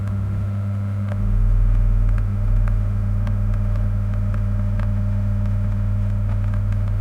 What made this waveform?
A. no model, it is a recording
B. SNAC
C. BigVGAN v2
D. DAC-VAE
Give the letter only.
D